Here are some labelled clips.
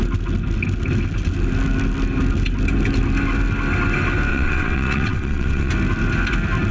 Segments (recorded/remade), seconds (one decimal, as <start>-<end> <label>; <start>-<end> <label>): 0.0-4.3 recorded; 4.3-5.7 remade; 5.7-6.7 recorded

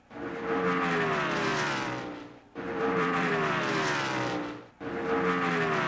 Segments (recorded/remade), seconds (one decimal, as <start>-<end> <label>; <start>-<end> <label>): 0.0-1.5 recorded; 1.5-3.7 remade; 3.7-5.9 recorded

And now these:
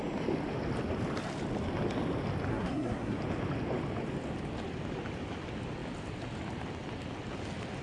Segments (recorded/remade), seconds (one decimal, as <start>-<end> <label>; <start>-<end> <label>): 0.0-2.5 recorded; 2.5-3.2 remade; 3.2-7.8 recorded

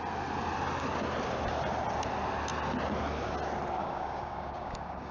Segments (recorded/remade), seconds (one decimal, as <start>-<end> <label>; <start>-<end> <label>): 0.0-3.8 recorded; 3.8-5.1 remade

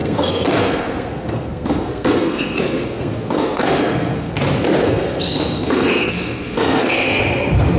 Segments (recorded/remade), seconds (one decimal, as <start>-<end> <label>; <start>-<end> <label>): 0.0-4.3 remade; 4.3-4.8 recorded; 4.8-7.2 remade; 7.2-7.8 recorded